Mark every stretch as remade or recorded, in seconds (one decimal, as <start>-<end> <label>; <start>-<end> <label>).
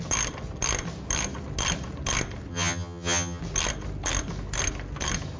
0.0-2.5 recorded; 2.5-3.4 remade; 3.4-5.4 recorded